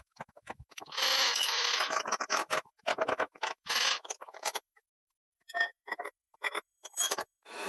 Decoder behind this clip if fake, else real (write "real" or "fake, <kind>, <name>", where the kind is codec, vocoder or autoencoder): fake, autoencoder, DAC-VAE